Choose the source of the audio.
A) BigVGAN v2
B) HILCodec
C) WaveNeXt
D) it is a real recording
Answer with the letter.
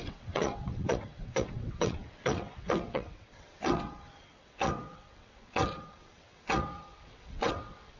C